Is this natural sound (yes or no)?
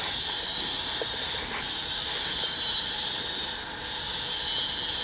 yes